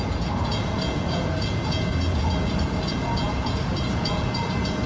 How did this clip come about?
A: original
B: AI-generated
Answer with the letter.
B